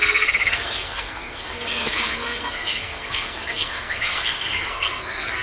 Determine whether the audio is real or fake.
fake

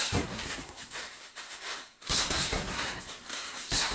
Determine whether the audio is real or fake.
fake